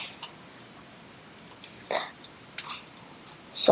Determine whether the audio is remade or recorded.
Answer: remade